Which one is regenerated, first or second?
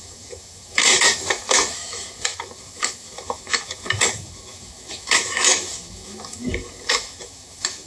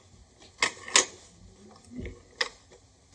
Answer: first